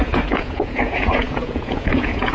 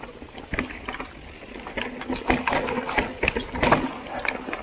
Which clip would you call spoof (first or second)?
first